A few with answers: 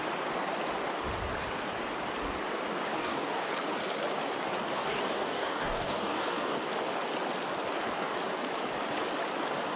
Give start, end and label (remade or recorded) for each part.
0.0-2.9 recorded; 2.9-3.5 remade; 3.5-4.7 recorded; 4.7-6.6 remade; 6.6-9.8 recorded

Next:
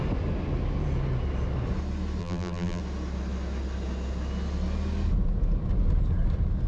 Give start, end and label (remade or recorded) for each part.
0.0-2.2 recorded; 2.2-2.8 remade; 2.8-6.7 recorded

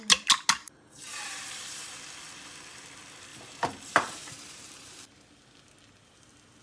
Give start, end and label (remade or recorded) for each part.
0.0-0.6 recorded; 0.6-2.0 remade; 2.0-3.3 recorded; 3.3-5.1 remade; 5.1-6.6 recorded

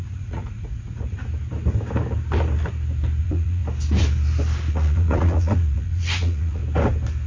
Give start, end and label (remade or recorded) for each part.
0.0-1.2 remade; 1.2-3.2 recorded; 3.2-3.6 remade; 3.6-4.7 recorded; 4.7-6.6 remade; 6.6-7.3 recorded

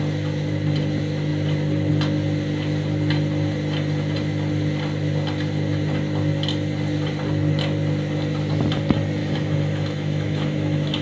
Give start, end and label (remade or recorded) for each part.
0.0-9.2 recorded; 9.2-11.0 remade

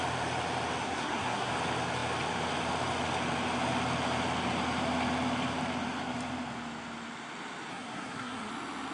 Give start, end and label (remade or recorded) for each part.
0.0-0.8 recorded; 0.8-1.5 remade; 1.5-7.7 recorded; 7.7-8.5 remade; 8.5-8.9 recorded